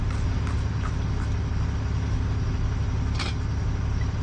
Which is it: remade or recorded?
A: recorded